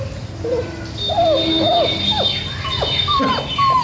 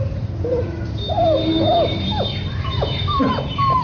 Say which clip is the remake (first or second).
second